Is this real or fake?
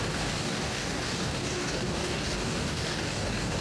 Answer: fake